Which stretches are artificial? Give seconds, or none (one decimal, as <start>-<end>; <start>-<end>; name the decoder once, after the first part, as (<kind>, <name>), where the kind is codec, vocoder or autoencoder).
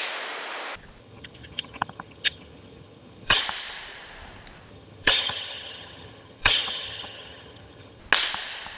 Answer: 1.0-3.4 (vocoder, HiFi-GAN); 4.7-8.0